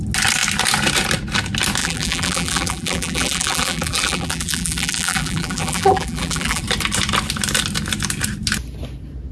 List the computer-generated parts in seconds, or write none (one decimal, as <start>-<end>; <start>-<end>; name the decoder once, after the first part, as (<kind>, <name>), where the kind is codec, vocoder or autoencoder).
1.8-6.6 (vocoder, BigVGAN v2)